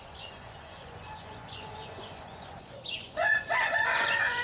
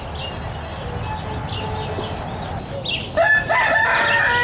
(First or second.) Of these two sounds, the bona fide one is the second